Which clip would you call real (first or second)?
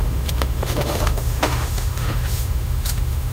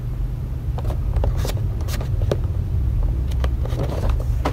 second